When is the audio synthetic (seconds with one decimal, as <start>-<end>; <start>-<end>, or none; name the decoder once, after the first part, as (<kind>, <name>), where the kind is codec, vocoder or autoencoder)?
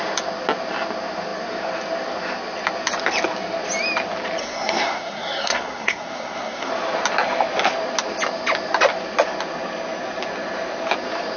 4.4-6.7 (codec, SNAC)